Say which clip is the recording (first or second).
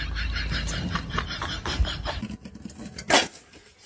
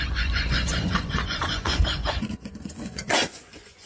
first